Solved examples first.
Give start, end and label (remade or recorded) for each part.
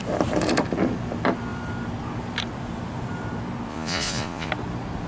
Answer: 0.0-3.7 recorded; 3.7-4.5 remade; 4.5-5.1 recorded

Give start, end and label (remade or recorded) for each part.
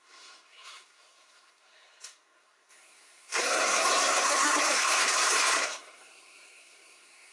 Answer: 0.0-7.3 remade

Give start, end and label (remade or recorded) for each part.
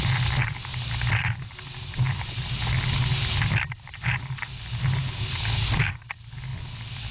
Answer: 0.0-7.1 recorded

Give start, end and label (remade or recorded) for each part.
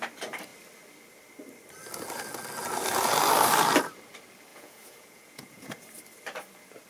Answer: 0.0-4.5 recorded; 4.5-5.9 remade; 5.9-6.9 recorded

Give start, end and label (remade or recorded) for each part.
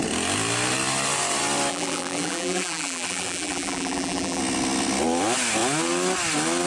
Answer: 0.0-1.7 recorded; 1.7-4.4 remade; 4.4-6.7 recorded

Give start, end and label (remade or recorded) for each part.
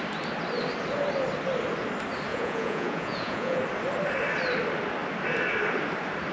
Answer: 0.0-2.3 recorded; 2.3-3.6 remade; 3.6-6.3 recorded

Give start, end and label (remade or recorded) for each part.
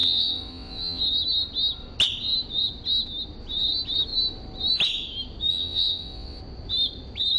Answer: 0.0-1.0 remade; 1.0-5.5 recorded; 5.5-6.4 remade; 6.4-7.4 recorded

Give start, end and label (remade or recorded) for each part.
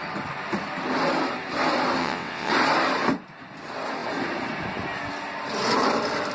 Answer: 0.0-2.0 recorded; 2.0-2.5 remade; 2.5-6.3 recorded